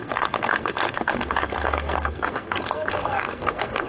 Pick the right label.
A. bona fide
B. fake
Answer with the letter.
B